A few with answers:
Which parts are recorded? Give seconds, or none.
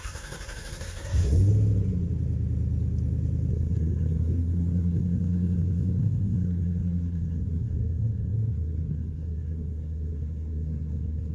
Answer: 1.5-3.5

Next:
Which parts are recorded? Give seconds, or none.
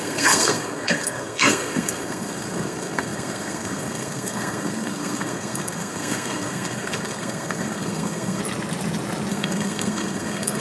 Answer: 8.4-9.3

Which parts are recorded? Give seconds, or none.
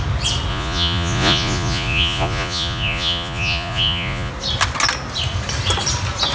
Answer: 0.0-0.5; 4.3-6.3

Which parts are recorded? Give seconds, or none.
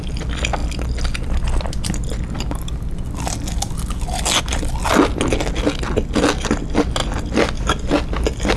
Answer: 0.0-8.6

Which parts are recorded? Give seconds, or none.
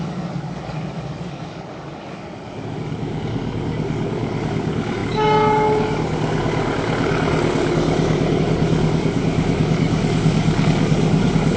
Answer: none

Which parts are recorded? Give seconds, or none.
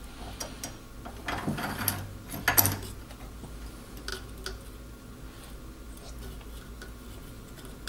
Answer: 0.0-7.9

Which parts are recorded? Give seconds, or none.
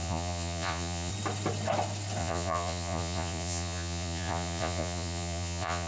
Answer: 1.1-2.2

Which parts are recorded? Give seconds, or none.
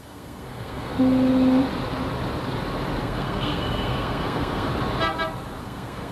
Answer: 0.9-3.0; 4.7-5.6